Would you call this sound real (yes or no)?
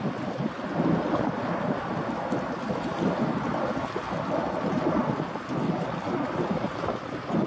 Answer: yes